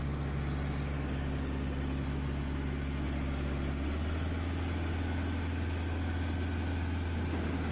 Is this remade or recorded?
recorded